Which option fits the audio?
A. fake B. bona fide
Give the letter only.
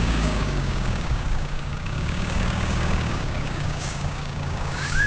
A